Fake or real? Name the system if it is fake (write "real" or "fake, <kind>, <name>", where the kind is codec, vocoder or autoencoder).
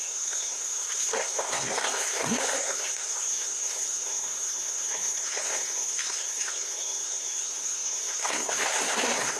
fake, codec, SNAC